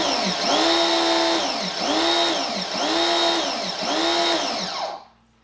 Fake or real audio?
real